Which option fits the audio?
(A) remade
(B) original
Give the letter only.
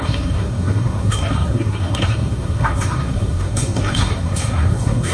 A